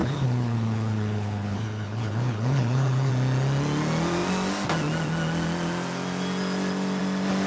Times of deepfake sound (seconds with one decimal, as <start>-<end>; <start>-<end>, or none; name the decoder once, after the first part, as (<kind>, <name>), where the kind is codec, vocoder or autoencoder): 0.0-3.1 (codec, HILCodec)